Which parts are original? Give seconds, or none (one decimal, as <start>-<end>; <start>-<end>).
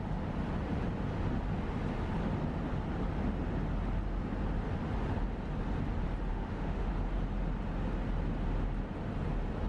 0.0-6.3; 6.9-9.7